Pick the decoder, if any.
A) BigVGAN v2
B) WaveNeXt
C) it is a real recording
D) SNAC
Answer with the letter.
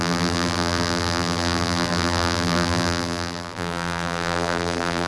A